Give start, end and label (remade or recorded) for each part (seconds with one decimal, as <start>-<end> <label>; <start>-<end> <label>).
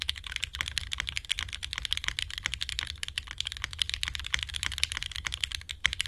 0.0-6.1 recorded